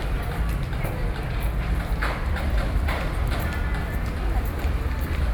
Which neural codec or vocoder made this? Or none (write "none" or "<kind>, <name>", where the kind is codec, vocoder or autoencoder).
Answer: none